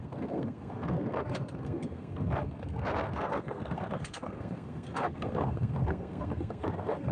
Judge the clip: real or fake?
fake